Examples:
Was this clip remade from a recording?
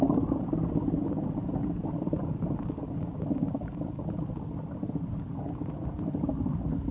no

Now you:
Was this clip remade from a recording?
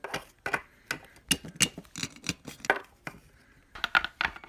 no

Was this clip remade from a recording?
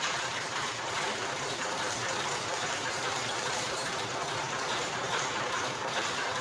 yes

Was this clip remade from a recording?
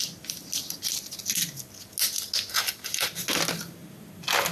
no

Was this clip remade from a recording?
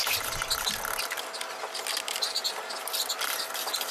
no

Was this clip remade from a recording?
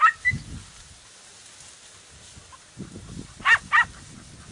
no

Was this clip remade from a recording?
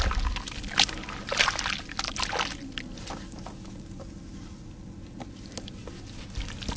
no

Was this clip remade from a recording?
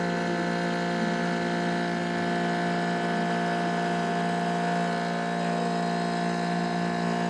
no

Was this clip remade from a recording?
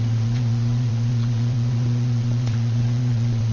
yes